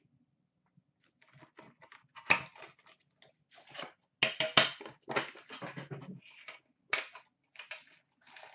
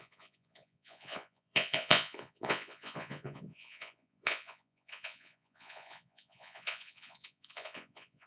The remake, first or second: second